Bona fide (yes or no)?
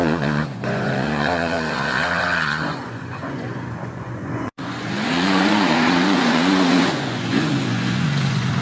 no